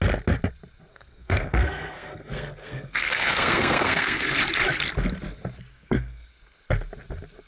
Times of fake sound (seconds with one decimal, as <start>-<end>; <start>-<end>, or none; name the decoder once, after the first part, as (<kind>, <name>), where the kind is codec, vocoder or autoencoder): 0.9-4.4 (codec, SNAC); 5.7-6.3